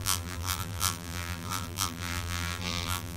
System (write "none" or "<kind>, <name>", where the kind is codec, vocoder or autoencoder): vocoder, BigVGAN v2